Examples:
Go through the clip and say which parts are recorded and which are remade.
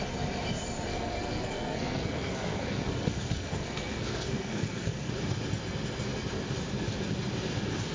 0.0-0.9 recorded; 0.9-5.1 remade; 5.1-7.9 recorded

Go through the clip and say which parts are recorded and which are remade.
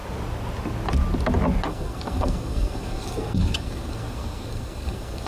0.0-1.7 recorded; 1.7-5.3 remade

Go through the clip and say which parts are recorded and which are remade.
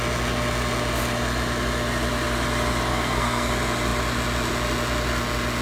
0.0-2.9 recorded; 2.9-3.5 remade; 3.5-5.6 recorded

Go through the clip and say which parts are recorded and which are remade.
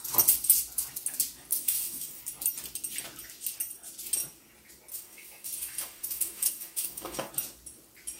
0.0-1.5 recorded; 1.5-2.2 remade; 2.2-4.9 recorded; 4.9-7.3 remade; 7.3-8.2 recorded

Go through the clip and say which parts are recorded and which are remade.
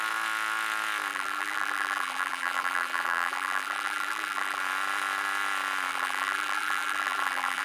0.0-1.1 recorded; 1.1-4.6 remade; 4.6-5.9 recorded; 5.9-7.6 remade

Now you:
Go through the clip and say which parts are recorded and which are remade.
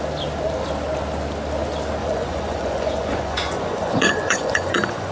0.0-2.0 recorded; 2.0-5.1 remade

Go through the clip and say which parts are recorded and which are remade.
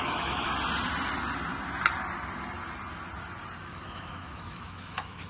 0.0-0.5 remade; 0.5-3.6 recorded; 3.6-5.3 remade